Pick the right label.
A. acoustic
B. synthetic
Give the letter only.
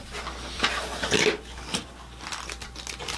A